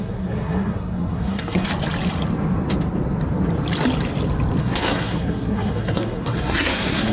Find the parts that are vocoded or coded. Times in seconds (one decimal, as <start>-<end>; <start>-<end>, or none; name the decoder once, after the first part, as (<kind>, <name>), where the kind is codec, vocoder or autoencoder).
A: 0.0-1.7 (codec, SNAC); 4.6-7.1